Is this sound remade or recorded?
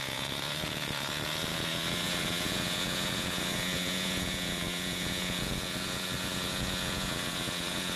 remade